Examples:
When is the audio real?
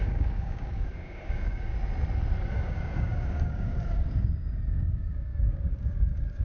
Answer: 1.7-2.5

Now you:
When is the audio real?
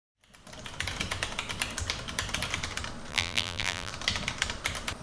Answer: 0.0-3.1; 3.9-5.0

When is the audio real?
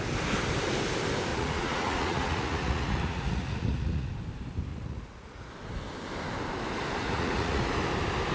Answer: 0.0-1.3; 4.1-4.7; 5.5-7.0; 7.7-8.3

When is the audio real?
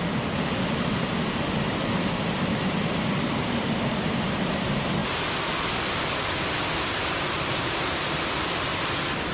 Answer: 0.0-9.3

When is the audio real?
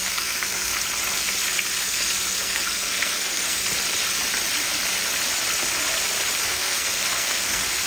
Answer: 0.7-1.8; 3.6-6.4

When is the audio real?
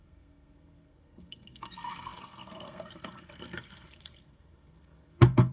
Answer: none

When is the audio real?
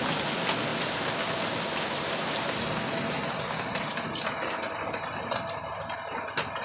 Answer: 0.0-6.6